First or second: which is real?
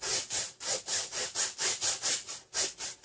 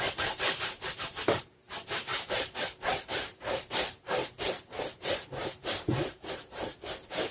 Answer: first